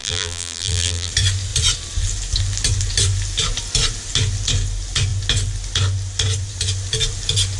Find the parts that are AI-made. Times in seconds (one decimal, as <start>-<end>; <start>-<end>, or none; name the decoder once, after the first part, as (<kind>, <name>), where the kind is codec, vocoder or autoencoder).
0.0-1.1 (vocoder, BigVGAN v2)